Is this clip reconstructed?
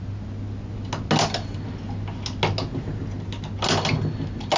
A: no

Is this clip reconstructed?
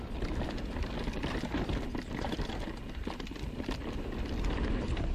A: no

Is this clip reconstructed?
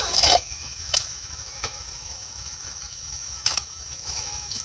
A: yes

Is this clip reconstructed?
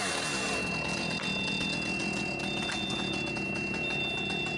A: no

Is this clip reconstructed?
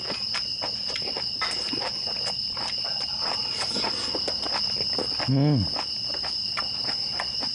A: no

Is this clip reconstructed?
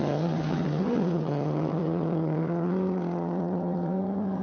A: yes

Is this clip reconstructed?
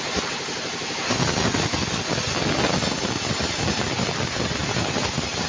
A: no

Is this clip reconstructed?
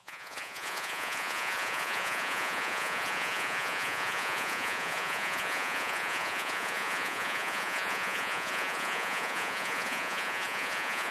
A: yes